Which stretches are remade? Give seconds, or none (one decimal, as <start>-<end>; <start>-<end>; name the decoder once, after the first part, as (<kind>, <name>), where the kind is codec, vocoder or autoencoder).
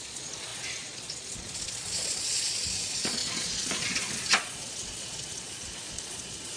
0.0-6.6 (vocoder, Vocos)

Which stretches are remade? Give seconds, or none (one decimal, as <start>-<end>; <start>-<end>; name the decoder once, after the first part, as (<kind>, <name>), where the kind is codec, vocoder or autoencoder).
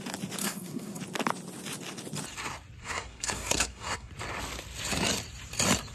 0.4-1.0 (codec, SNAC); 2.8-4.1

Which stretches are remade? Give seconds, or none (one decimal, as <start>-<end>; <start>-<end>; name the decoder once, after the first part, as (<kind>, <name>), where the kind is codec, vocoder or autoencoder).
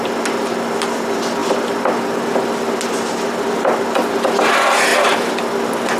1.4-2.7 (vocoder, BigVGAN v2); 4.9-5.4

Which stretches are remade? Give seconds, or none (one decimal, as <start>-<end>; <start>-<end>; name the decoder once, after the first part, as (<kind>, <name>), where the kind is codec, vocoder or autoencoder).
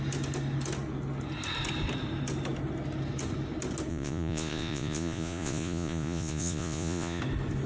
3.9-7.2 (vocoder, Vocos)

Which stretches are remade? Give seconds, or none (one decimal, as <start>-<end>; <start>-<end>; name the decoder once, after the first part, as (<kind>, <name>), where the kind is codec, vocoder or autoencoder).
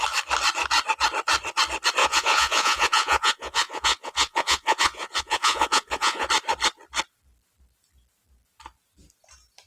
2.0-6.3 (vocoder, Vocos)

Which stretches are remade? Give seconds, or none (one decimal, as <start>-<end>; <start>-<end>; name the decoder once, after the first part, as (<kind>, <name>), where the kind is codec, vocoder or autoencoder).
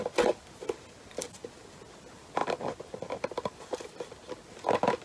none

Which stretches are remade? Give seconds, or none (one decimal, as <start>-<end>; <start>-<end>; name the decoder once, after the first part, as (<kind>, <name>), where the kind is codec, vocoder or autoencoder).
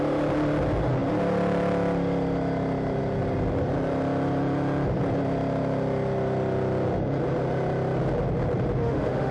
8.8-9.3 (autoencoder, DAC-VAE)